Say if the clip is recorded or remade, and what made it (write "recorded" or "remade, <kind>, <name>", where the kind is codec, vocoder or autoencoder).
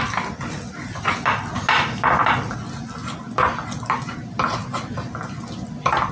recorded